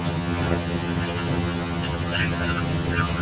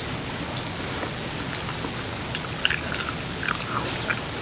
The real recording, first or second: second